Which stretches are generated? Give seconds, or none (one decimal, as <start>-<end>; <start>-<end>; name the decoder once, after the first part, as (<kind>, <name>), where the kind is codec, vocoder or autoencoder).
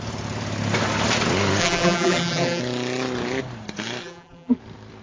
1.6-2.6 (vocoder, BigVGAN v2); 4.0-4.6